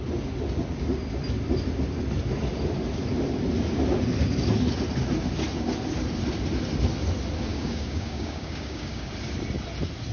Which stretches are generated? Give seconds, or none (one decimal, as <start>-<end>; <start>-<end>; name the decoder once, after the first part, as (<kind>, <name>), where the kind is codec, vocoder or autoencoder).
7.5-9.1 (codec, DAC)